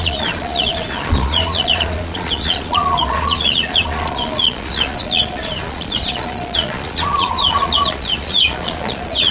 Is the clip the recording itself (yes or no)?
no